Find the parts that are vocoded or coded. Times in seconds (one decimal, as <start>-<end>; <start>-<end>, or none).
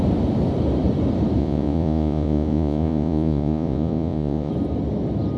1.4-4.5